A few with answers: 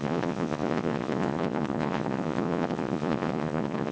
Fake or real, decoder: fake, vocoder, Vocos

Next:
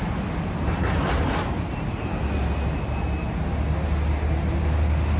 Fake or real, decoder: real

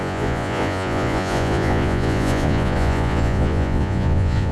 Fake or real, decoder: fake, vocoder, Vocos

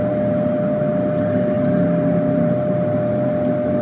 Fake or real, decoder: real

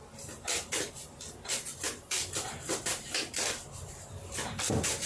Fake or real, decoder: fake, vocoder, BigVGAN v2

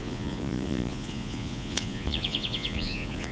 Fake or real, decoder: fake, vocoder, Vocos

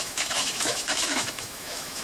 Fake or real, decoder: fake, autoencoder, DAC-VAE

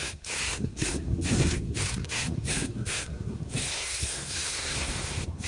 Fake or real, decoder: fake, codec, SNAC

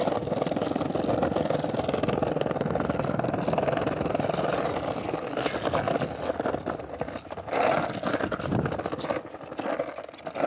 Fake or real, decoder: real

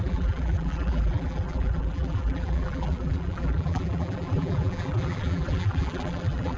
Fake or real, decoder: fake, vocoder, BigVGAN v2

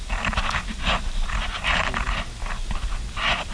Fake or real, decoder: real